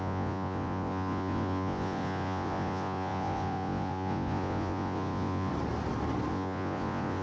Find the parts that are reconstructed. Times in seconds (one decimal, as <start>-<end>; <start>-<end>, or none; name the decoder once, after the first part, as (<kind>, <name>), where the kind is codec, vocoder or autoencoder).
0.0-5.5 (vocoder, Vocos); 6.3-7.2